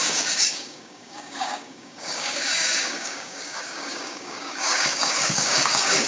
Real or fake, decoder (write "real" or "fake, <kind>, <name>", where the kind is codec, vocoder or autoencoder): fake, codec, DAC